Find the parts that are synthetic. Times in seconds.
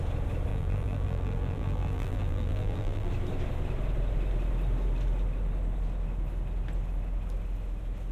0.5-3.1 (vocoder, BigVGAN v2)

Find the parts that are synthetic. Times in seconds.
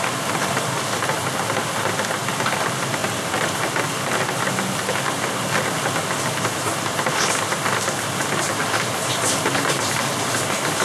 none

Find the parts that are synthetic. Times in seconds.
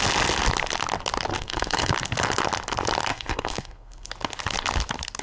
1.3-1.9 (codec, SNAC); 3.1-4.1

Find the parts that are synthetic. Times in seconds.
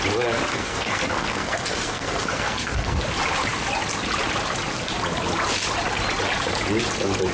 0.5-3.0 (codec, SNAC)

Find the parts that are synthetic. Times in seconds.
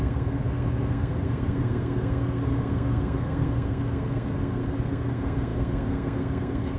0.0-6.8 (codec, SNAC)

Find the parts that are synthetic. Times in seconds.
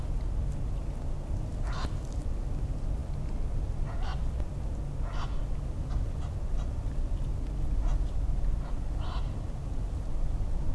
none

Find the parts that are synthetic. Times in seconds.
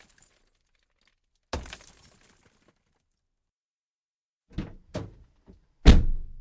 none